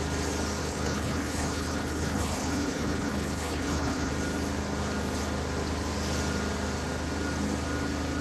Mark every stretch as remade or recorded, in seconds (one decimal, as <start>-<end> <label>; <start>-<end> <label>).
0.0-0.6 recorded; 0.6-4.1 remade; 4.1-8.2 recorded